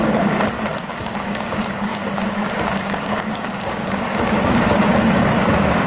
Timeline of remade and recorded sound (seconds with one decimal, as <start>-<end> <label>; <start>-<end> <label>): 0.0-5.9 remade